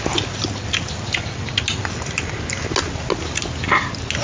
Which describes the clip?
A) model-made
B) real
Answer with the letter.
B